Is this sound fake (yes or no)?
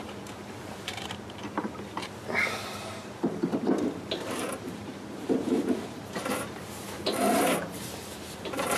yes